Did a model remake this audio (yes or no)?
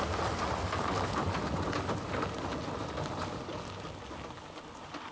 no